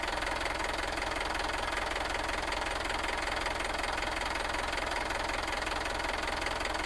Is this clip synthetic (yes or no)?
no